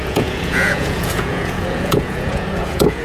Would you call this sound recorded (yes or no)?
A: no